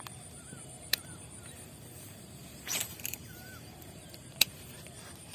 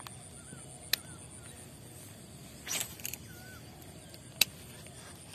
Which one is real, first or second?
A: second